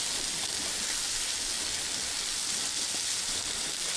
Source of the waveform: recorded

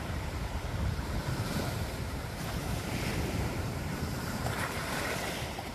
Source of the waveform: remade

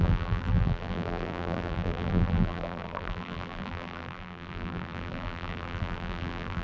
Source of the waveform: remade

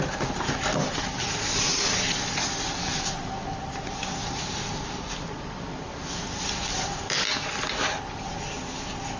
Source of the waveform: recorded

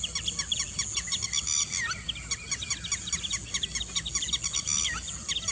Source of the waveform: recorded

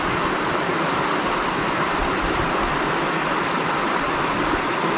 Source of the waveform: recorded